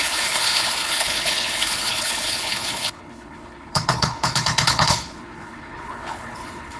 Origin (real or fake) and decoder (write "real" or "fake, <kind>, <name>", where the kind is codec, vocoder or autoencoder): fake, codec, HILCodec